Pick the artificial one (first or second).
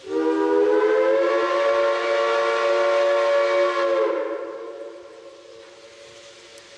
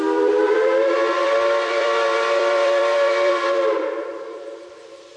second